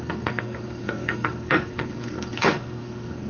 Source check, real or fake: fake